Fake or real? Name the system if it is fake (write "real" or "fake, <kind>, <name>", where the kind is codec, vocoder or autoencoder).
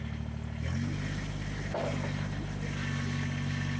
real